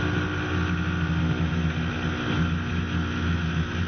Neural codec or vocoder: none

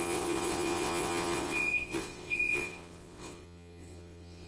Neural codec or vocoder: vocoder, WaveNeXt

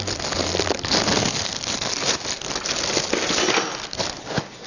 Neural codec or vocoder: none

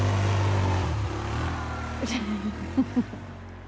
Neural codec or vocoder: none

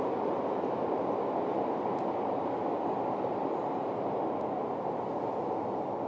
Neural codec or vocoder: none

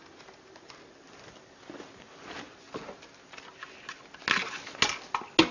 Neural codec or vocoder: none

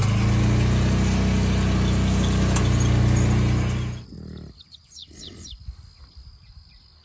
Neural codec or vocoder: none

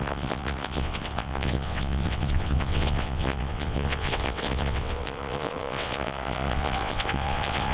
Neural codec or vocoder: vocoder, WaveNeXt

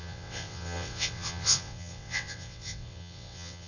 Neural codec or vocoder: vocoder, WaveNeXt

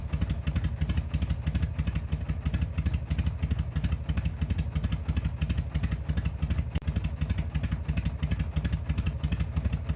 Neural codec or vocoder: none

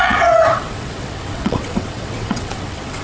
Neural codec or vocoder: vocoder, WaveNeXt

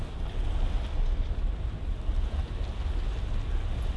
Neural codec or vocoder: none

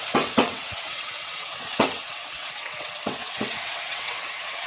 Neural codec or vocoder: vocoder, WaveNeXt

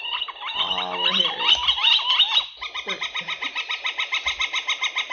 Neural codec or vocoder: none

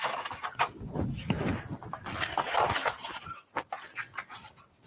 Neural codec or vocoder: none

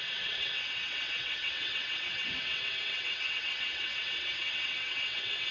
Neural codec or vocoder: vocoder, WaveNeXt